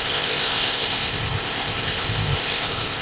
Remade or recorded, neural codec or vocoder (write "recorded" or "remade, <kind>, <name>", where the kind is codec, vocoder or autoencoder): remade, codec, ZipCodec